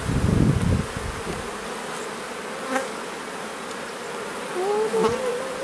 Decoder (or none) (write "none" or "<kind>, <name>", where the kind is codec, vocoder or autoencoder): none